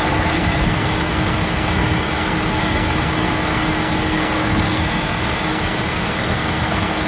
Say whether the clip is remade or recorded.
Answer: remade